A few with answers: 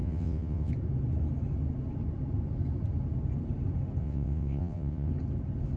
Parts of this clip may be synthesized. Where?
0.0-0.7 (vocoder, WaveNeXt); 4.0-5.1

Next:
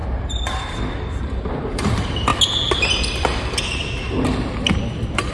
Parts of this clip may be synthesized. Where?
0.0-2.3 (vocoder, BigVGAN v2); 4.5-5.3

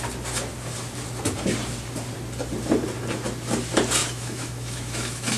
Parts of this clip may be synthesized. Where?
4.0-5.4 (autoencoder, DAC-VAE)

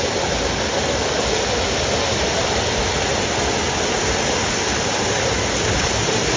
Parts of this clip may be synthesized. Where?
none

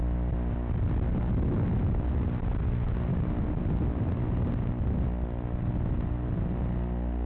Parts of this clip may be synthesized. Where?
none

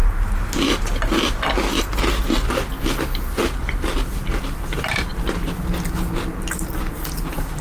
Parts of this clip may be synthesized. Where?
none

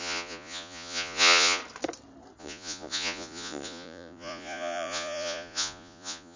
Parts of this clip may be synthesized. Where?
0.0-1.6 (vocoder, Vocos); 2.4-6.4